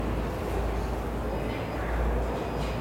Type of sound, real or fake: real